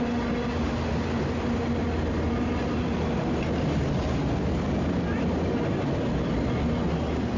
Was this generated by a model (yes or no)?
no